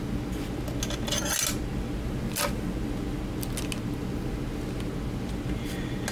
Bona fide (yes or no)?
yes